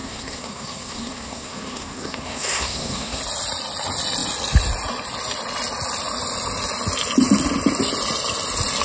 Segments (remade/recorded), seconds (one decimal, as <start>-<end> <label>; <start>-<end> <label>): 0.0-3.2 remade; 3.2-8.8 recorded